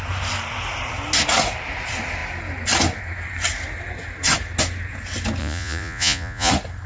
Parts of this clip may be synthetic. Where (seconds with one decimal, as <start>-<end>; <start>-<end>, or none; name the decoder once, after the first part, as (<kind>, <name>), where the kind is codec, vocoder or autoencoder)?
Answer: 5.4-6.5 (vocoder, Vocos)